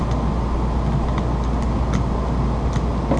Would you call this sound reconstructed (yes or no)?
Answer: no